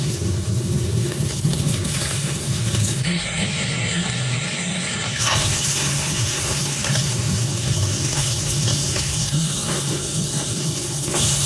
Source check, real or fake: fake